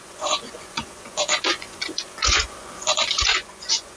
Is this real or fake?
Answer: fake